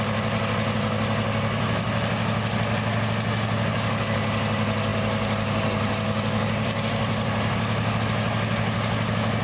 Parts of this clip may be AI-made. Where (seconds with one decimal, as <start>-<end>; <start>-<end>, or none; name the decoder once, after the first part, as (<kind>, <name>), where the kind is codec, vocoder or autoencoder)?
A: none